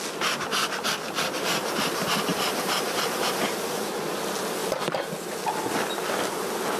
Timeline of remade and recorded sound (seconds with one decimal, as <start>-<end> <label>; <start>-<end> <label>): 0.0-0.6 recorded; 0.6-1.2 remade; 1.2-2.3 recorded; 2.3-3.7 remade; 3.7-6.8 recorded